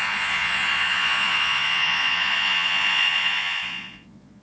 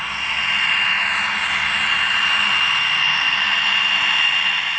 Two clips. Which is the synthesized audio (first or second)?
first